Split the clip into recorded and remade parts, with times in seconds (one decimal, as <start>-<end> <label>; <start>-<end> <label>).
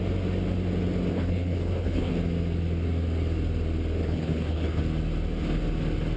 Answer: 0.0-1.1 recorded; 1.1-2.1 remade; 2.1-4.0 recorded; 4.0-4.8 remade; 4.8-6.2 recorded